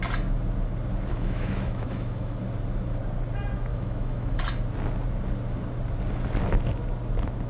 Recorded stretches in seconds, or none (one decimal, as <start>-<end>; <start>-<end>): 0.0-1.1; 2.4-3.7; 4.4-7.5